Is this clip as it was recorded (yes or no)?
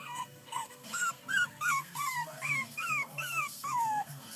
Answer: no